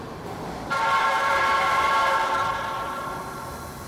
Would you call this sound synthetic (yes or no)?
yes